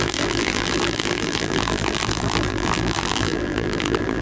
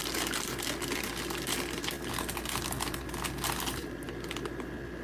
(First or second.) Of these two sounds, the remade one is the first